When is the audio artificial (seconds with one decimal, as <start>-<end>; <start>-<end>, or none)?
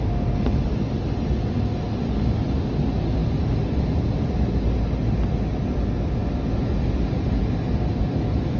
none